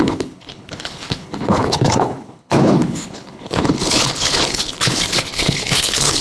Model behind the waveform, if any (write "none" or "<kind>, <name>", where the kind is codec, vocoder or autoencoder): codec, HILCodec